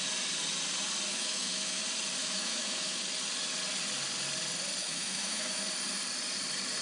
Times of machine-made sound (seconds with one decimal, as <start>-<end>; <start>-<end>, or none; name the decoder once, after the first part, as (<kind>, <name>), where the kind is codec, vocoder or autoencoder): 1.1-1.8 (autoencoder, DAC-VAE); 2.2-3.0; 4.8-5.6